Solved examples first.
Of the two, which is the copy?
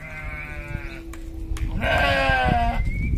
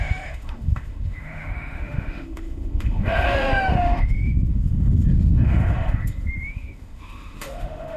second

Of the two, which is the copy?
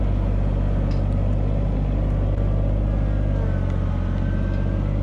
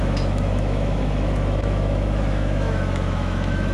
second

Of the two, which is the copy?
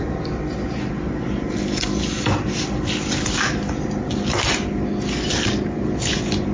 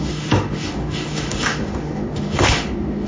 second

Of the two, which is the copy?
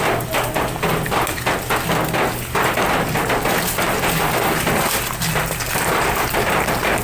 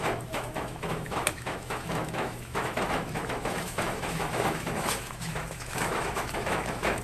second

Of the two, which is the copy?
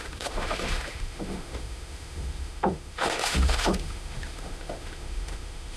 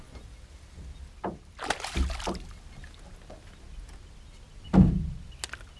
first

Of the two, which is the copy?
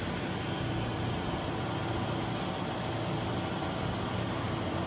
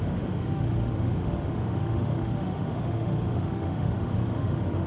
second